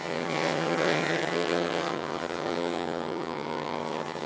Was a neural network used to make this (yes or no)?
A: yes